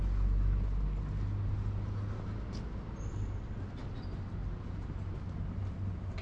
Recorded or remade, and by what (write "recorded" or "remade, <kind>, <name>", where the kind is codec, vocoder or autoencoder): recorded